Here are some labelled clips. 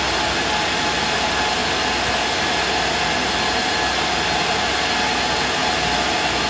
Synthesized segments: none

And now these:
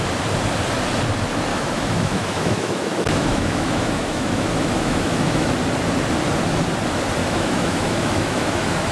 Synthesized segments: 1.5-5.5 (autoencoder, DAC-VAE); 7.2-8.9

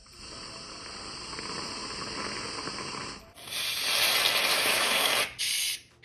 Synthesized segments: 4.5-5.1 (autoencoder, DAC-VAE)